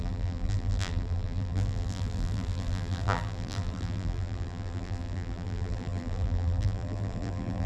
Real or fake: fake